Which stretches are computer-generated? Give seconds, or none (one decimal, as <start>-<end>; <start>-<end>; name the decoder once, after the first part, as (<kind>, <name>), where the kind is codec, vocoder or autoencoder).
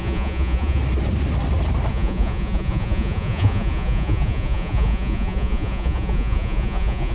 0.0-0.8 (vocoder, Vocos); 1.9-7.1